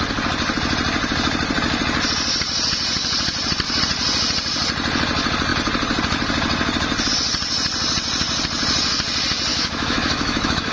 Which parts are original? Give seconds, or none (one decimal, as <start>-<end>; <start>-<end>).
0.0-9.5